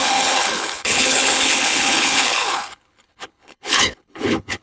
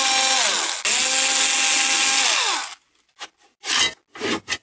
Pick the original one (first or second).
second